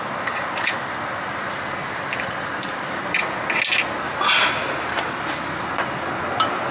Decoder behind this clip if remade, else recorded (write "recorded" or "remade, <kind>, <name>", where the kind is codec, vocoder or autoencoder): recorded